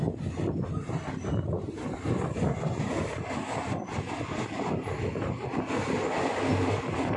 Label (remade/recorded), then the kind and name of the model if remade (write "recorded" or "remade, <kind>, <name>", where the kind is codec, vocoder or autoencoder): recorded